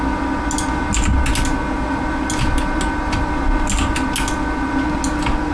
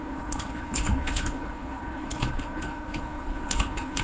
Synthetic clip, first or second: second